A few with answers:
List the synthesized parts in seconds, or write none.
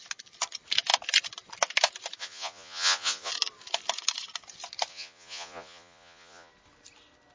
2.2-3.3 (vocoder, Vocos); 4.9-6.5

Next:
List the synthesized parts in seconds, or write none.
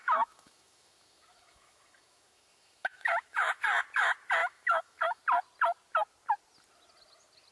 0.0-3.6 (autoencoder, DAC-VAE); 4.4-5.2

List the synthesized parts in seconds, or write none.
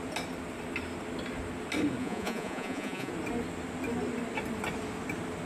2.0-3.1 (vocoder, Vocos)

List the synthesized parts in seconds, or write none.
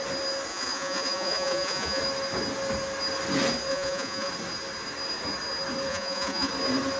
0.5-2.0 (vocoder, Vocos); 3.7-4.3; 5.9-6.5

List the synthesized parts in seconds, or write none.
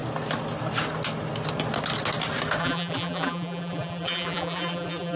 2.6-5.2 (vocoder, BigVGAN v2)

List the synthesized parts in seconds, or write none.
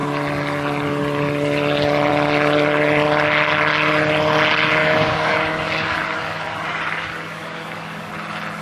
4.8-8.1 (codec, DAC)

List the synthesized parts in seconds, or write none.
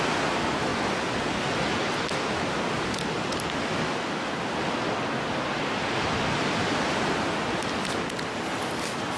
none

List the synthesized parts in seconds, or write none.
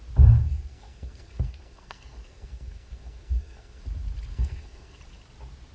0.4-3.8 (codec, SNAC); 4.3-5.0